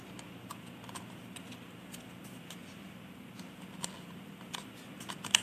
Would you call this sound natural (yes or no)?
yes